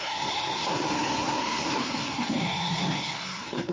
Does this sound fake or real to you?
fake